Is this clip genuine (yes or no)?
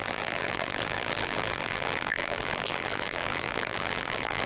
no